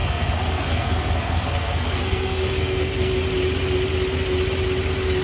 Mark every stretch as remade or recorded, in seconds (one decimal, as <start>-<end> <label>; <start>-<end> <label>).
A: 0.0-3.1 remade; 3.1-5.2 recorded